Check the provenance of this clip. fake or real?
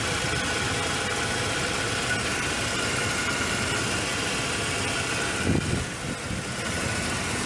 real